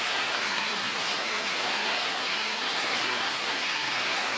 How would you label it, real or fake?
fake